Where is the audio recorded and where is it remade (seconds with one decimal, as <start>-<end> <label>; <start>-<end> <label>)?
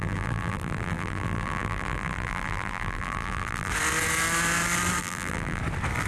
0.0-3.7 remade; 3.7-5.0 recorded; 5.0-5.6 remade; 5.6-6.1 recorded